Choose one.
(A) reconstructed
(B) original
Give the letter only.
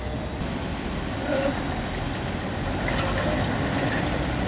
B